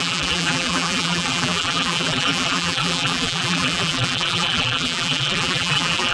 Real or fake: fake